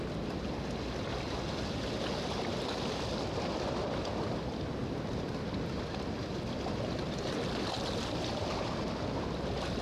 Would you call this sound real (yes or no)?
yes